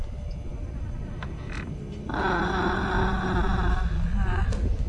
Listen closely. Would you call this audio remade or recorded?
remade